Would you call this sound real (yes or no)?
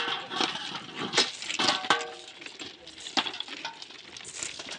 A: yes